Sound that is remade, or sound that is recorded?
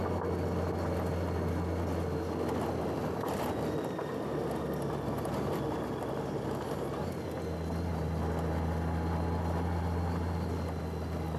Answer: recorded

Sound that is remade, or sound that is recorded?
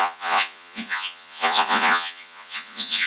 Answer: remade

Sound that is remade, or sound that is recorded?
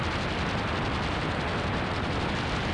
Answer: remade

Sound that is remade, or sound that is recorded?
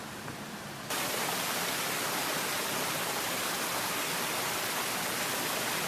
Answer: recorded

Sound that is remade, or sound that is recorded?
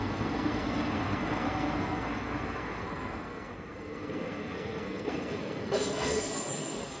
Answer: remade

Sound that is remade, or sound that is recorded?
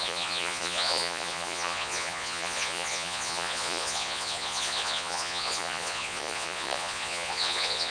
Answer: remade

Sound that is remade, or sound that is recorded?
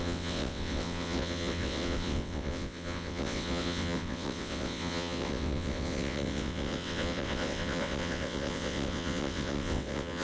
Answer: remade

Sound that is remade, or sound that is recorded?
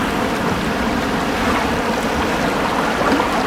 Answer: recorded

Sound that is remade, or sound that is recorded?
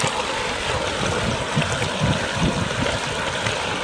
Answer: recorded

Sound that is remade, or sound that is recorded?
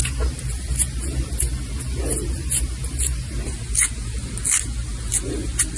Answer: recorded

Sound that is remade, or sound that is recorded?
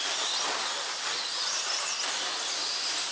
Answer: remade